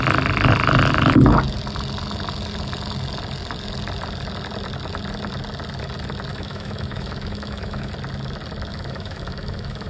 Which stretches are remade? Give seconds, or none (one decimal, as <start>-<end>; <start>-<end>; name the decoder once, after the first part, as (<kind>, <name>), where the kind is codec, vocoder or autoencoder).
6.3-7.9 (autoencoder, DAC-VAE); 8.7-9.9